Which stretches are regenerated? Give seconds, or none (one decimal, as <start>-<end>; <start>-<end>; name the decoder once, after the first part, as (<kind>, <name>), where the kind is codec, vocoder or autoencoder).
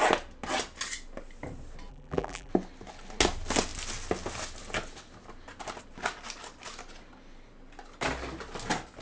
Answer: 1.9-2.5 (vocoder, BigVGAN v2)